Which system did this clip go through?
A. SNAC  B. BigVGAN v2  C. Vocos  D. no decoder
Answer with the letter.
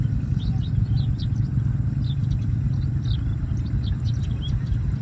D